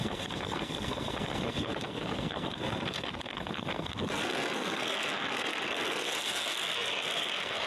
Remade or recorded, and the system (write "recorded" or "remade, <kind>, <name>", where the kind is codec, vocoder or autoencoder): remade, codec, SNAC